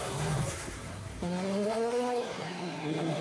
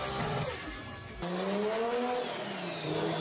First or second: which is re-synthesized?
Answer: first